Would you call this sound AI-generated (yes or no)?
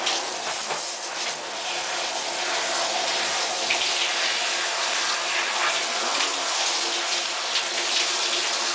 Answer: no